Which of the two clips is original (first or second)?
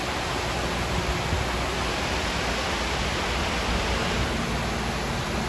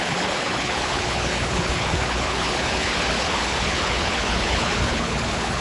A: first